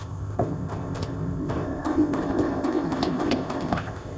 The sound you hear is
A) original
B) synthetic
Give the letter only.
B